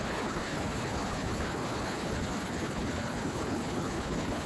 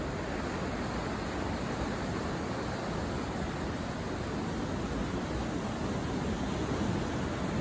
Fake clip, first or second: first